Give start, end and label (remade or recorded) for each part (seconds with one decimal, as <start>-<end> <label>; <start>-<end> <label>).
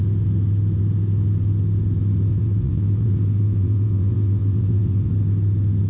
0.0-2.3 recorded; 2.3-5.1 remade; 5.1-5.9 recorded